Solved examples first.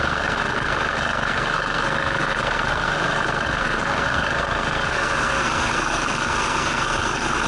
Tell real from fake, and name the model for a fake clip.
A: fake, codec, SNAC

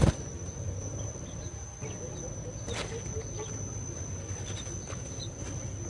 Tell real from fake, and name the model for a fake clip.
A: real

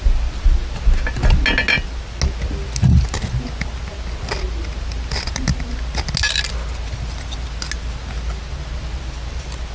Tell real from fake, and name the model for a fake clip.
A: real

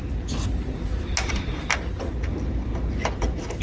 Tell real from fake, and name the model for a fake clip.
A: real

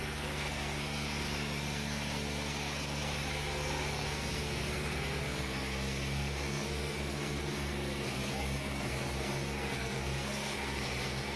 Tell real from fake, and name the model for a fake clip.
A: fake, codec, SNAC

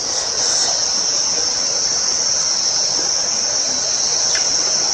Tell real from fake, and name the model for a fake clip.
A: real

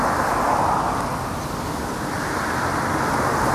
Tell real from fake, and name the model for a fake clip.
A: real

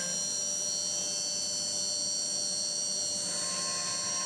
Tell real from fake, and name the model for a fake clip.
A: real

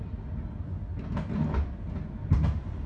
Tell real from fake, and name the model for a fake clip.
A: real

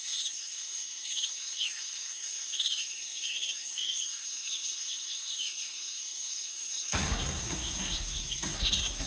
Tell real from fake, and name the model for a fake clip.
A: fake, codec, SNAC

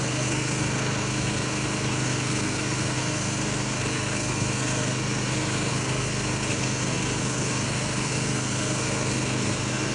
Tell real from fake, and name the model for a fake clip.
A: fake, codec, SNAC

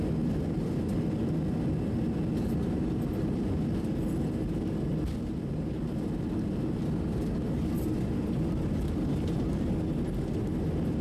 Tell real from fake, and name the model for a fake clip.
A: real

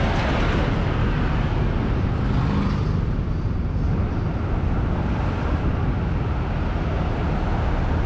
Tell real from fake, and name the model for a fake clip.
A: real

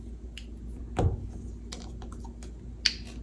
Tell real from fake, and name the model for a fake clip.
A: real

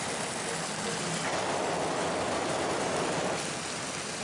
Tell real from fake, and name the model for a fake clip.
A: real